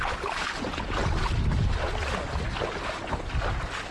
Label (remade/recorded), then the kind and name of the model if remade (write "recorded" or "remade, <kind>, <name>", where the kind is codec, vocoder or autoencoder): recorded